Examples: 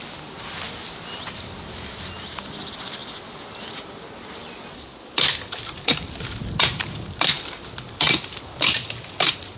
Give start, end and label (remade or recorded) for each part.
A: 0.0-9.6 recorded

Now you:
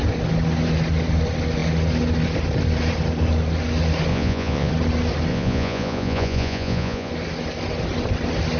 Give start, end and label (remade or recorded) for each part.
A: 0.0-4.1 recorded; 4.1-4.7 remade; 4.7-5.3 recorded; 5.3-7.1 remade; 7.1-8.6 recorded

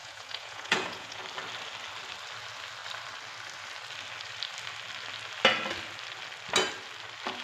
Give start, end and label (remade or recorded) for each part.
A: 0.0-1.2 remade; 1.2-7.4 recorded

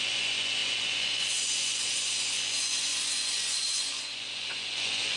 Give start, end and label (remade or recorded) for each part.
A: 0.0-5.2 remade

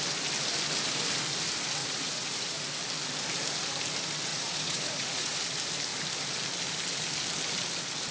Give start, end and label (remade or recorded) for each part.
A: 0.0-1.8 recorded; 1.8-2.6 remade; 2.6-4.3 recorded; 4.3-5.4 remade; 5.4-8.1 recorded

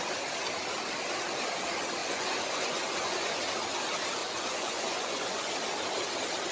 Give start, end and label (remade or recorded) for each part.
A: 0.0-2.0 recorded; 2.0-3.4 remade; 3.4-4.2 recorded; 4.2-5.5 remade; 5.5-6.5 recorded

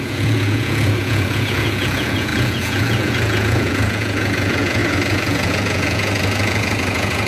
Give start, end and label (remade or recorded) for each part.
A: 0.0-7.3 remade